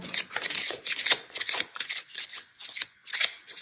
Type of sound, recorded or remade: remade